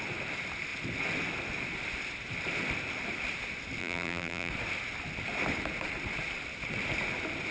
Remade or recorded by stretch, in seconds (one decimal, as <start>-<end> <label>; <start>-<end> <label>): 0.0-3.8 recorded; 3.8-4.5 remade; 4.5-7.5 recorded

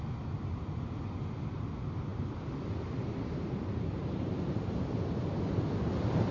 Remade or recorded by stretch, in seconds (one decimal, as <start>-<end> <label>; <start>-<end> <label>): 0.0-6.3 recorded

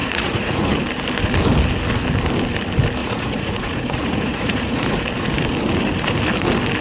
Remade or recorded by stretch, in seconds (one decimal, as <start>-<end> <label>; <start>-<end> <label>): 0.0-0.7 remade; 0.7-3.0 recorded; 3.0-5.0 remade; 5.0-6.8 recorded

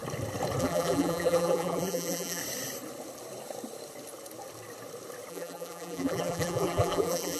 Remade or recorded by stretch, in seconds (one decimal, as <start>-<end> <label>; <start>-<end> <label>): 0.0-0.6 recorded; 0.6-2.4 remade; 2.4-5.3 recorded; 5.3-7.4 remade

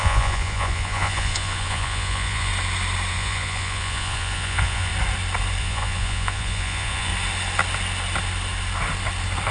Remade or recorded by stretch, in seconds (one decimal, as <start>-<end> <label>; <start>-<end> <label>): 0.0-2.5 remade; 2.5-3.1 recorded; 3.1-4.9 remade; 4.9-5.6 recorded; 5.6-7.1 remade; 7.1-9.5 recorded

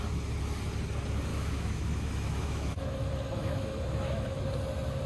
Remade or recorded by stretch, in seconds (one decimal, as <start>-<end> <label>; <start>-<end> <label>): 0.0-1.3 recorded; 1.3-4.4 remade; 4.4-5.1 recorded

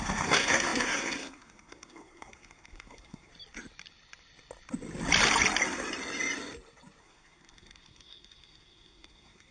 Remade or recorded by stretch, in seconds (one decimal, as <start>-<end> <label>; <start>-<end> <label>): 0.0-3.3 remade; 3.3-7.0 recorded; 7.0-9.5 remade

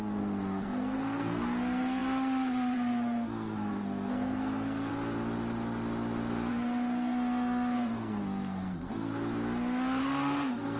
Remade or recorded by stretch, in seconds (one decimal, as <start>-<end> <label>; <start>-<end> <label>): 0.0-4.9 remade; 4.9-6.5 recorded; 6.5-9.1 remade; 9.1-10.0 recorded; 10.0-10.8 remade